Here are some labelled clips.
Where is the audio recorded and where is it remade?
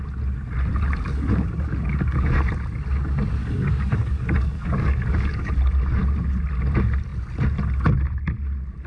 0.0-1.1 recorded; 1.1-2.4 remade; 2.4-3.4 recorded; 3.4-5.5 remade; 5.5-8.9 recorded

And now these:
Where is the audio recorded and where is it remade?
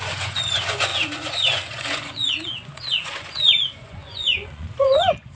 0.0-5.4 remade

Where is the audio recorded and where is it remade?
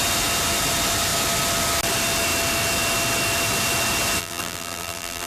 0.0-4.2 recorded; 4.2-5.3 remade